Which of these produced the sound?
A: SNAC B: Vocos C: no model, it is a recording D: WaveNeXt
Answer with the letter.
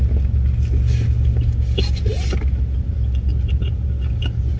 C